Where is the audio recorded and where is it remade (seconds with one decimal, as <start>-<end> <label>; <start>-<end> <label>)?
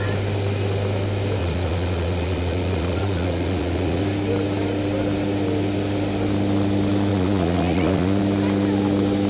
0.0-1.4 recorded; 1.4-4.0 remade; 4.0-7.1 recorded; 7.1-8.2 remade; 8.2-9.3 recorded